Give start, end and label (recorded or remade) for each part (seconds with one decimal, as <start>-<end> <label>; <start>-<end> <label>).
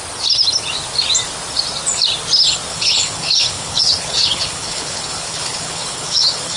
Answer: 0.0-2.7 recorded; 2.7-6.6 remade